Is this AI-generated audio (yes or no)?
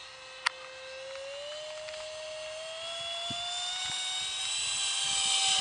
no